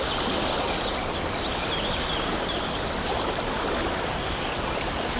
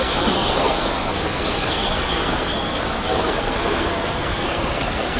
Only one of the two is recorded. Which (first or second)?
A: first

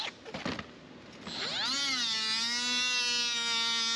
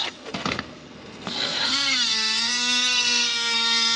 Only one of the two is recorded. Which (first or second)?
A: first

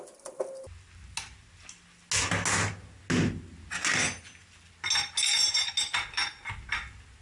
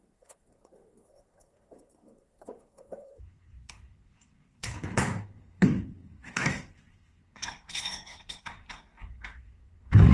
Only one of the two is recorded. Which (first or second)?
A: first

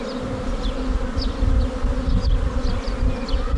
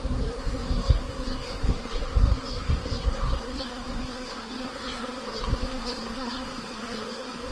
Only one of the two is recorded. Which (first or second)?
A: first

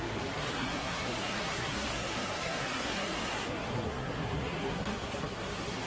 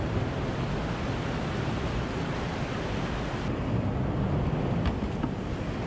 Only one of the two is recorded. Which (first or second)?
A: second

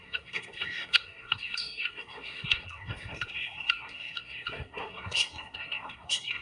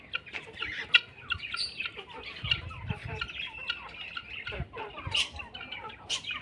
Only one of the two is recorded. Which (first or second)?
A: second